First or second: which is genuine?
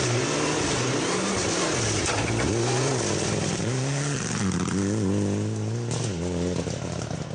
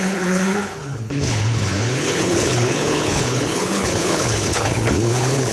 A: first